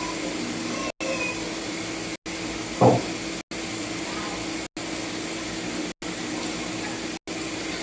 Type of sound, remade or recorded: recorded